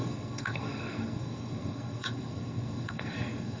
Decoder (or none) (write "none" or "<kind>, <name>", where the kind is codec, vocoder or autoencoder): codec, SNAC